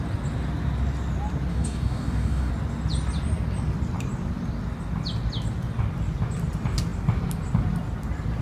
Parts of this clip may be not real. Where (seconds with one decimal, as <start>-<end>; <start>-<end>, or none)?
1.5-2.5